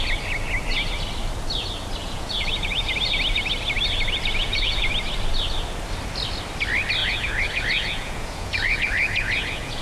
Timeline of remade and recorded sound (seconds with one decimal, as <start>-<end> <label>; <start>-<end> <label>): 0.0-2.0 recorded; 2.0-2.9 remade; 2.9-4.4 recorded; 4.4-4.9 remade; 4.9-7.0 recorded; 7.0-9.8 remade